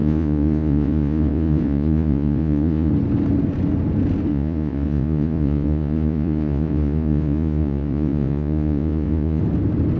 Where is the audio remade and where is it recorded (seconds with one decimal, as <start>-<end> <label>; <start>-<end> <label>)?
0.0-2.9 remade; 2.9-4.3 recorded; 4.3-9.4 remade; 9.4-10.0 recorded